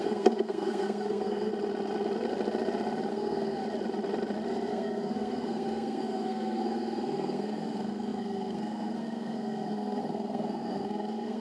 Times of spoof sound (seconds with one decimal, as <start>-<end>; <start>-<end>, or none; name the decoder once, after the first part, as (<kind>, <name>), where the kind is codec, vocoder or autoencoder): 0.0-1.5 (codec, SNAC); 3.1-3.6; 4.7-11.4